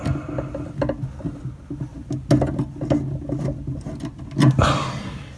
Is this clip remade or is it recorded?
recorded